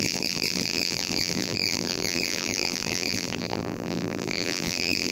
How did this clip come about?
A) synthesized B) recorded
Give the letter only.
A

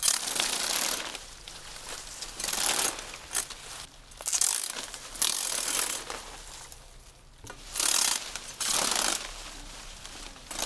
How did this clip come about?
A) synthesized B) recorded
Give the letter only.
B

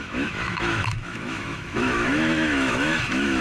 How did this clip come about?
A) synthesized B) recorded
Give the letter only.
A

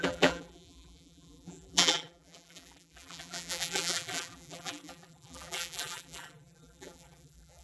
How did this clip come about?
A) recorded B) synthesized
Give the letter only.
B